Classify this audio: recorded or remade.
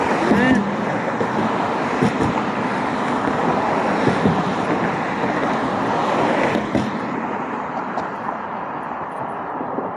recorded